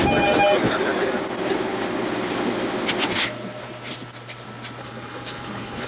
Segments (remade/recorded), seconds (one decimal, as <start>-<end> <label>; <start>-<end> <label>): 0.0-4.8 recorded; 4.8-5.9 remade